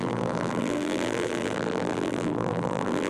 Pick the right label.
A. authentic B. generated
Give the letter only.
B